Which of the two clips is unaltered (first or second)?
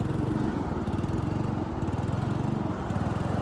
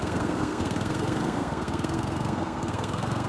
first